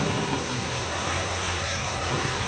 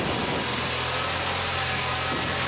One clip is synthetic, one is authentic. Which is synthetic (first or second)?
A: first